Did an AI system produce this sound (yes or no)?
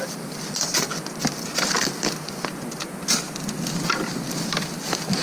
no